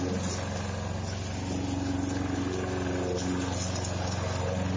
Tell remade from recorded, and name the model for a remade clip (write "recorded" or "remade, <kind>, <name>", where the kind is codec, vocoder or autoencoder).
recorded